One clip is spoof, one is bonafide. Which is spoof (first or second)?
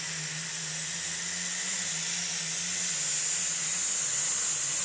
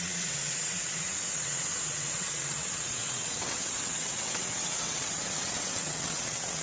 second